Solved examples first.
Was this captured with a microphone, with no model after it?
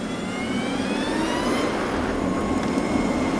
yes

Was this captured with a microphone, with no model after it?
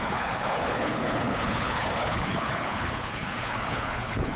no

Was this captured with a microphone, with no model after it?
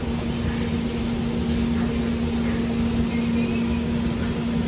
yes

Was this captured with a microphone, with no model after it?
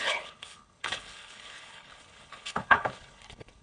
no